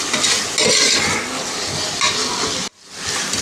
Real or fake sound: real